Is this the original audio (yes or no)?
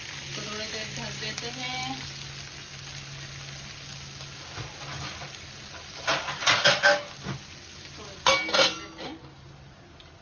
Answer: yes